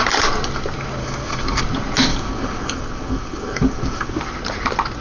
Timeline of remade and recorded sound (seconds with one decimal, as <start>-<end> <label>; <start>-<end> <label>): 0.0-1.0 recorded; 1.0-1.6 remade; 1.6-2.1 recorded; 2.1-4.2 remade; 4.2-5.0 recorded